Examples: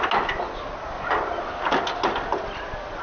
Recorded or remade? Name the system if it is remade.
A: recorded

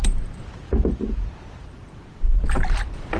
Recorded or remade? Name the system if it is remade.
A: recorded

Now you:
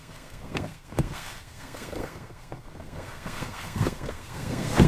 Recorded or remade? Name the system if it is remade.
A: remade, codec, SNAC